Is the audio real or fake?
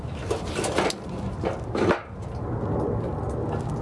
real